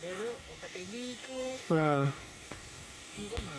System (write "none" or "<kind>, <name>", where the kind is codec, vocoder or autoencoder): codec, DAC